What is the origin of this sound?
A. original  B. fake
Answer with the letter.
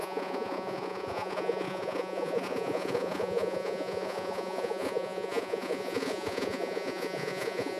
B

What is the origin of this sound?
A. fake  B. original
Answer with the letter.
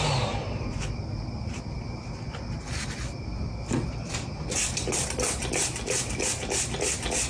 B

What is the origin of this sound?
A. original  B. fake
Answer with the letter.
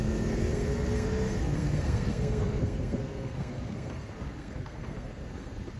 B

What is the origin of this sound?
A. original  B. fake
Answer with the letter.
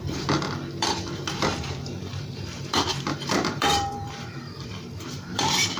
B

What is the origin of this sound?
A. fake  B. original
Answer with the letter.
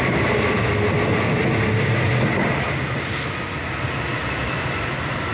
B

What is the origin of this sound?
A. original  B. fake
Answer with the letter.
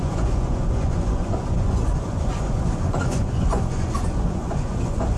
B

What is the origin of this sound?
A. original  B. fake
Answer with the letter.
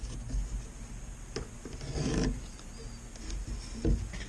A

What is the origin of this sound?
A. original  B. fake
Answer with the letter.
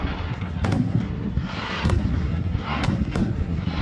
B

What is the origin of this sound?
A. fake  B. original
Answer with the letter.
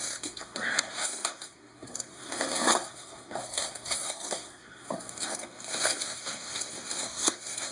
A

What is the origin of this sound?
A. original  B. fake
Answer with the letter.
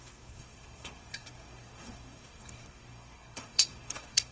B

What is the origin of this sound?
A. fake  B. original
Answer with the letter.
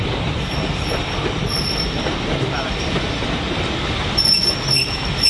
B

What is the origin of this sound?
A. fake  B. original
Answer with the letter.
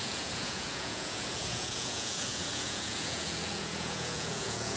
A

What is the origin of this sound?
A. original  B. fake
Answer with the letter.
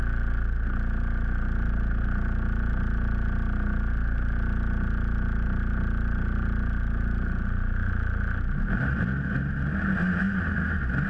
A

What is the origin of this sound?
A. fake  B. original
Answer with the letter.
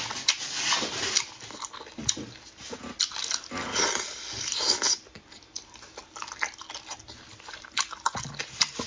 B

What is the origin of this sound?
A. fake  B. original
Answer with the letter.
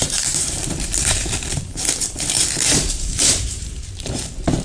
A